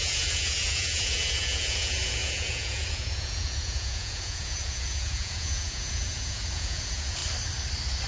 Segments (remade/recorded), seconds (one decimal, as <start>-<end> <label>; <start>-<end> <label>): 0.0-7.2 remade; 7.2-8.1 recorded